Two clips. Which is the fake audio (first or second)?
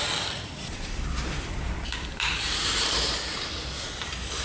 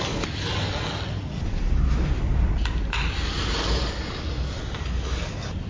first